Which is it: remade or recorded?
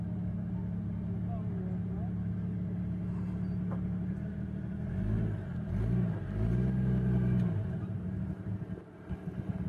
recorded